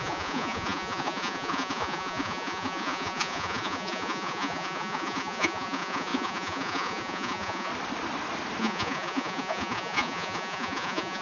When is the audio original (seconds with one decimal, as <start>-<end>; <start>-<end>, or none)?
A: 7.7-8.6